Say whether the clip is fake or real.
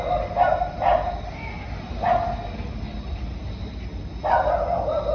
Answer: real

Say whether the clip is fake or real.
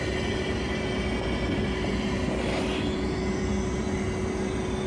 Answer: real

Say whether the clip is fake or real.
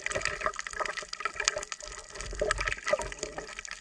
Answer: real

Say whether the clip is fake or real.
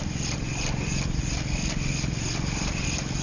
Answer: real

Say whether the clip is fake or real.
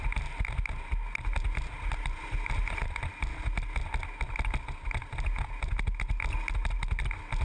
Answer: real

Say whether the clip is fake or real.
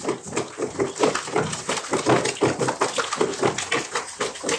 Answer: real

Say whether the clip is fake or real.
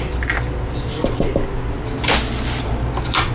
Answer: real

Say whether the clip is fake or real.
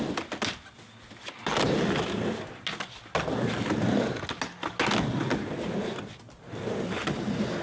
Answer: real